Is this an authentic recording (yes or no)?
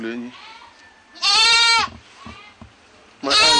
yes